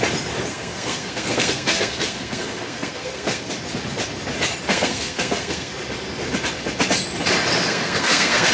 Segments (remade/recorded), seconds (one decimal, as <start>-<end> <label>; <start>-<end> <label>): 0.0-0.5 recorded; 0.5-3.5 remade; 3.5-4.7 recorded; 4.7-5.7 remade; 5.7-7.6 recorded; 7.6-8.5 remade